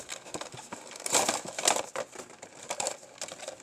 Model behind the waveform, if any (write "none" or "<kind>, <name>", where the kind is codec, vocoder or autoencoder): none